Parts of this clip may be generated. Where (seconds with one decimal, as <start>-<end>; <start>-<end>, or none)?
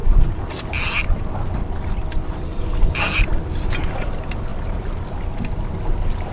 0.0-2.6